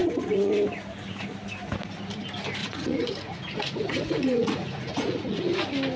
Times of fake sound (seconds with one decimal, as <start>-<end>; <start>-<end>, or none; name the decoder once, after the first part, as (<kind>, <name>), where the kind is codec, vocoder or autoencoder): 0.0-0.5 (vocoder, Vocos); 2.6-5.4